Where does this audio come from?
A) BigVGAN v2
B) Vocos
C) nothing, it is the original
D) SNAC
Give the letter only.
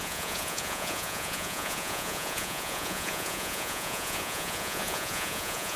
B